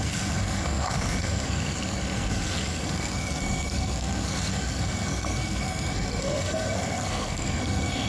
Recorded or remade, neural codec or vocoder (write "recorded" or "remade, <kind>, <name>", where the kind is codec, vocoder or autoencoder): remade, codec, SNAC